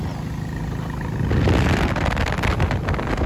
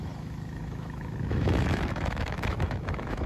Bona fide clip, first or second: first